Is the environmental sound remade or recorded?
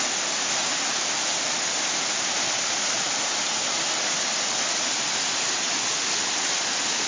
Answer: recorded